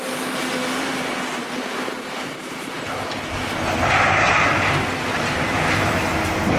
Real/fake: real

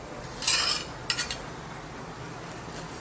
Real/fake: real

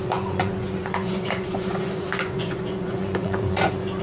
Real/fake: fake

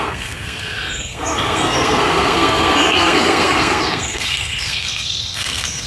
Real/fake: fake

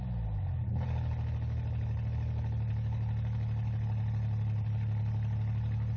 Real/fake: real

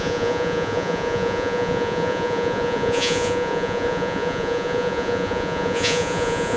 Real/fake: fake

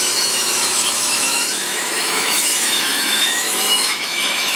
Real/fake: fake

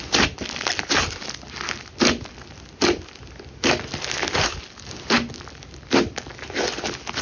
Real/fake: real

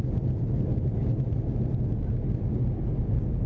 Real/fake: real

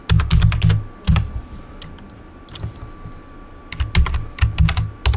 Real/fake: real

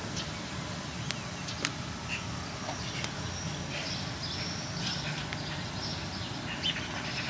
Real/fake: real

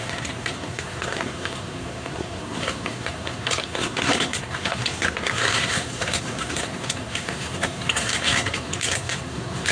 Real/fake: fake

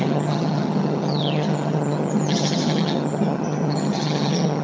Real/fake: fake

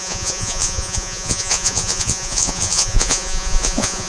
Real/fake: fake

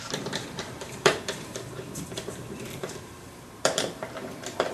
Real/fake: fake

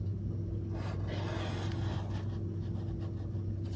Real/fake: real